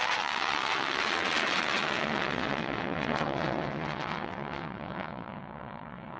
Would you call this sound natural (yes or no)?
no